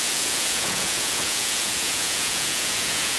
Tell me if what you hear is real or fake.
fake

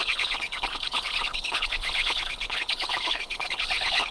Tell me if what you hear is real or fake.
fake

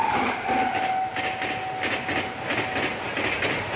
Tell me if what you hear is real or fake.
real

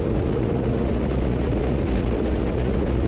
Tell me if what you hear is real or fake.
fake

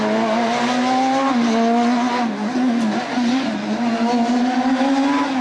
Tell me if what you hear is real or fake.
real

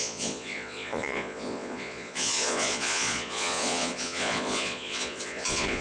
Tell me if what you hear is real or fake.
fake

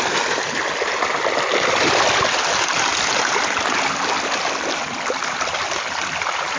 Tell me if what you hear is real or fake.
real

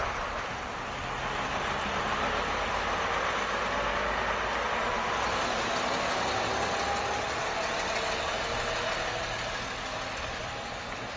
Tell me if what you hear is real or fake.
real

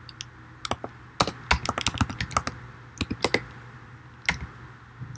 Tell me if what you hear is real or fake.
real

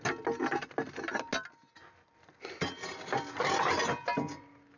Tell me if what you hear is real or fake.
real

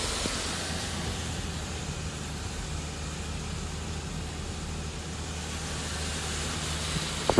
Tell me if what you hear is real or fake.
real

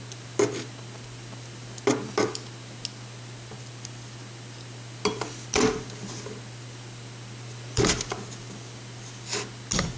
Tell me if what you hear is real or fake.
real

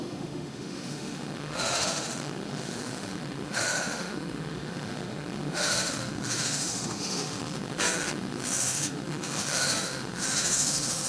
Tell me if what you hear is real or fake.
fake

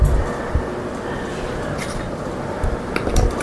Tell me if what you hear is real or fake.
real